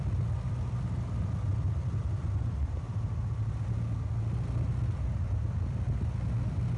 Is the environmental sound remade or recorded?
recorded